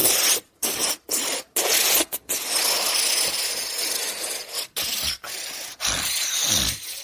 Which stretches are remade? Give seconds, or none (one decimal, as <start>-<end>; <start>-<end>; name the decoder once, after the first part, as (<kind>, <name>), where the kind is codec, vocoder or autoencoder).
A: none